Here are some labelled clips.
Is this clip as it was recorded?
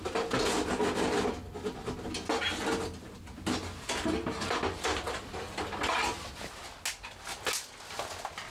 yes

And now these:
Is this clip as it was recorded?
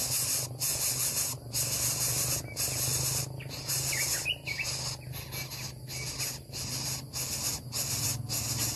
yes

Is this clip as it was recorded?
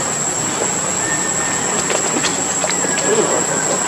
yes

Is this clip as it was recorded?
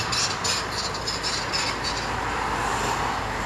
yes